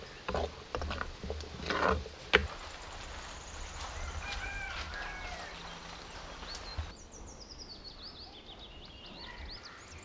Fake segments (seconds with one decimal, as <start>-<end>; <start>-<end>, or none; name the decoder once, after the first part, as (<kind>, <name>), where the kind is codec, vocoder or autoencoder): none